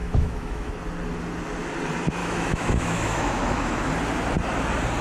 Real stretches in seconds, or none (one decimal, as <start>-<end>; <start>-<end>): 0.7-2.2; 3.9-5.0